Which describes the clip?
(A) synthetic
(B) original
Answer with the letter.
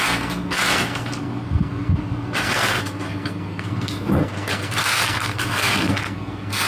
A